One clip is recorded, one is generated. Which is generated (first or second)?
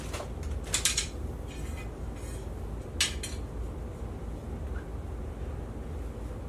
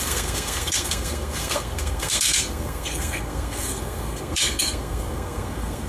second